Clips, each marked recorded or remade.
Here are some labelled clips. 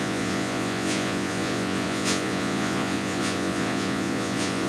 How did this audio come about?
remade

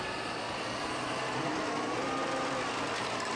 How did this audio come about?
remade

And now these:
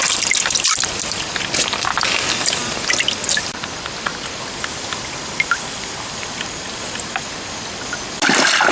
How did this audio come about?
recorded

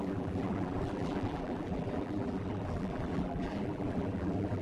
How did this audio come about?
remade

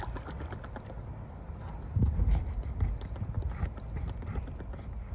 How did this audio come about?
recorded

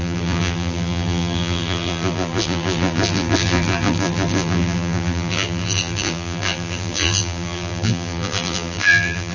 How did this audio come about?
remade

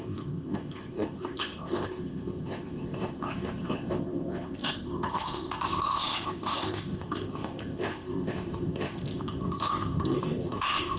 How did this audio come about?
remade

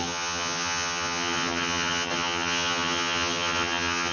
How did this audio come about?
remade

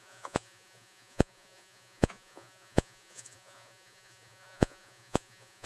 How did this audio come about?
remade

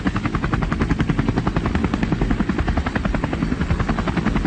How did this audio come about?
recorded